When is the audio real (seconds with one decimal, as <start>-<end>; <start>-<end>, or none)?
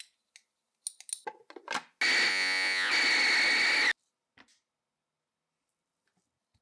0.0-2.3; 2.9-6.6